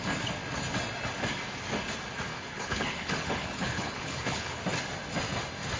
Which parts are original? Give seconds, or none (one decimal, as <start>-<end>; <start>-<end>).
0.0-2.3; 4.6-5.8